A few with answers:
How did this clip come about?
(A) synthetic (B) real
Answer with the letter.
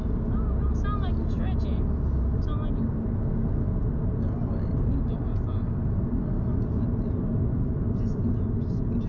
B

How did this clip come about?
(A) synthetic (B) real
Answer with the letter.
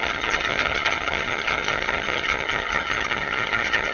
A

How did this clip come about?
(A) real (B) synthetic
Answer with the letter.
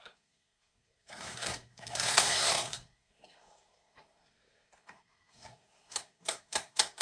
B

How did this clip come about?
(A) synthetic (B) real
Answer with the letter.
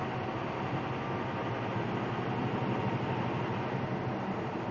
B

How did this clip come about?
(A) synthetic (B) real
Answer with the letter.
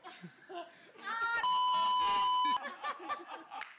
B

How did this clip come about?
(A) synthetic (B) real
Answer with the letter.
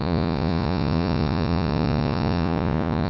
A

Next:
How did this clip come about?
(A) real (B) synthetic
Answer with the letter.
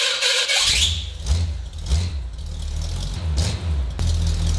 A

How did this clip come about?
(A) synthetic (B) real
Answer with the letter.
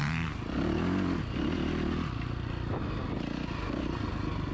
B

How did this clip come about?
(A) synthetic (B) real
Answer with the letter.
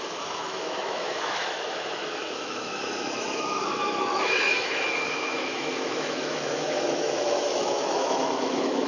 A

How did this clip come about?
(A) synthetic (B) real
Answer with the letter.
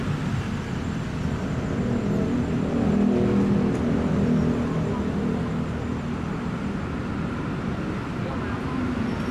B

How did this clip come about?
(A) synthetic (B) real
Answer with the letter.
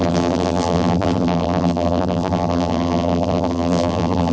A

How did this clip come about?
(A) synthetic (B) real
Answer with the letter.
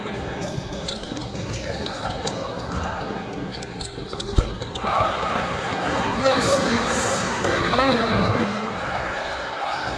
A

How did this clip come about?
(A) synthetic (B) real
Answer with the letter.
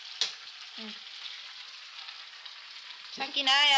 B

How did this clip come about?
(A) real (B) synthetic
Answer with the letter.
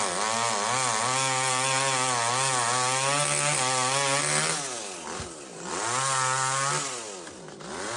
A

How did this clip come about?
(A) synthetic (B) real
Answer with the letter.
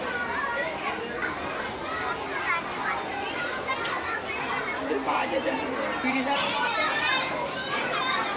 B